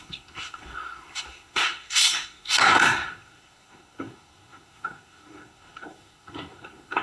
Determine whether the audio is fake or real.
fake